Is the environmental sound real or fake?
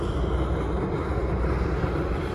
real